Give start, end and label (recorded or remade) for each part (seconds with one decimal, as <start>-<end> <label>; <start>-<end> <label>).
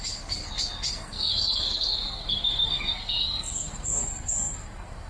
0.0-5.1 remade